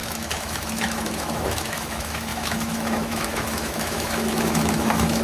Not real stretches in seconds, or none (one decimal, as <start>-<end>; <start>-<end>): 0.0-5.2